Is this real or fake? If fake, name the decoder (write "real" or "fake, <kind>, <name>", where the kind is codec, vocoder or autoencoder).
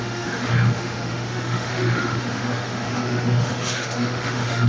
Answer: fake, autoencoder, DAC-VAE